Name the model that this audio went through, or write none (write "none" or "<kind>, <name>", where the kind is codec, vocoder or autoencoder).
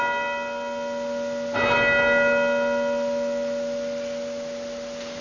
none